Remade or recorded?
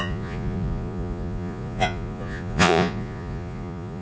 remade